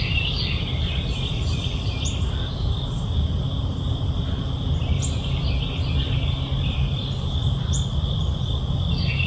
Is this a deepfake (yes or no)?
no